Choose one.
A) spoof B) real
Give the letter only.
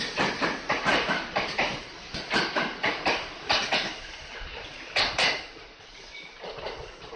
B